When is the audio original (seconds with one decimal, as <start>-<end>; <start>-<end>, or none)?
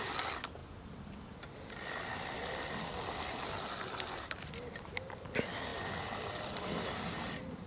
0.0-7.7